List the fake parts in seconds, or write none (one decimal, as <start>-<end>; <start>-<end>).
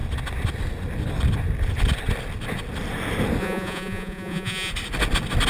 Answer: 3.4-4.7